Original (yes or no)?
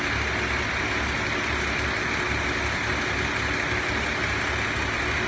yes